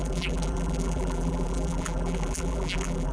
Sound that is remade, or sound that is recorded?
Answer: remade